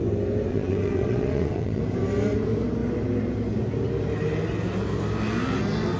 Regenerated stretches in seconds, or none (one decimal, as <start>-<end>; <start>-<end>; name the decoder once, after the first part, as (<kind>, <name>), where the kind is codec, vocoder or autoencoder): 0.5-1.8 (vocoder, WaveNeXt)